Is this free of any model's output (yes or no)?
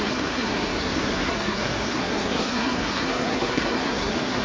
no